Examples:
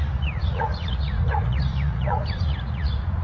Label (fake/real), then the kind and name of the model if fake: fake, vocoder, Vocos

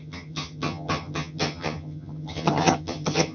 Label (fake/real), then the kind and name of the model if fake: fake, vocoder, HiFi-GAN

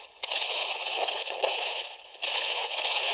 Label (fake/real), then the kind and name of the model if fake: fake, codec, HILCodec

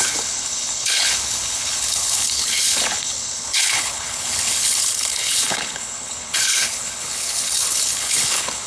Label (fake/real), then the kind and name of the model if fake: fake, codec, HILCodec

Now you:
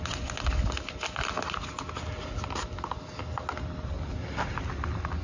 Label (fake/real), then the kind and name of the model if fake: real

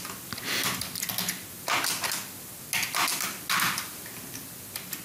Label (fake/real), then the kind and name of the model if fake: real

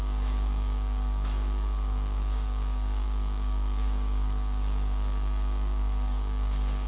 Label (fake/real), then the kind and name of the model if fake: fake, codec, DAC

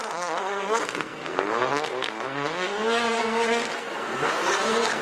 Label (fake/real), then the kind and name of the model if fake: fake, codec, SNAC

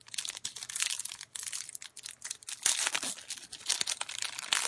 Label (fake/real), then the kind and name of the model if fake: real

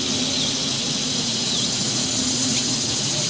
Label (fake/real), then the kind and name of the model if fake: fake, vocoder, Vocos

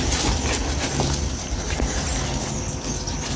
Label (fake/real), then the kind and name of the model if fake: real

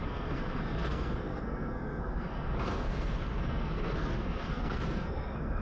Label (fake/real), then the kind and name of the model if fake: fake, codec, SNAC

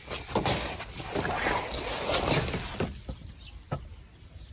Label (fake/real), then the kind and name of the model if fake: fake, vocoder, BigVGAN v2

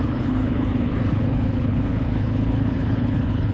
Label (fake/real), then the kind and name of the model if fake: fake, codec, HILCodec